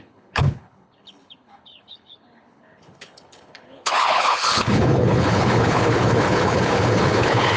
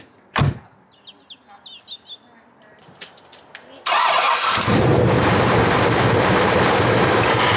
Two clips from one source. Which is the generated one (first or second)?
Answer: first